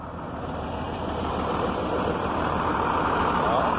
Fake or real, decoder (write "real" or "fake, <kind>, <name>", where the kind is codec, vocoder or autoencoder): fake, vocoder, BigVGAN v2